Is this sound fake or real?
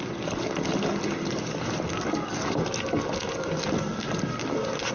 real